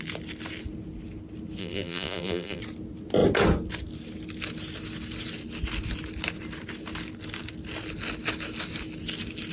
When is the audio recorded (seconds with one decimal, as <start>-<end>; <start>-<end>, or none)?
0.0-1.6; 2.6-9.5